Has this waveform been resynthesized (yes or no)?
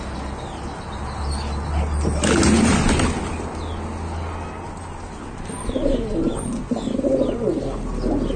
no